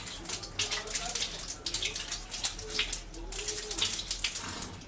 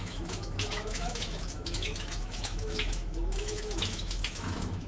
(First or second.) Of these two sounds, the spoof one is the second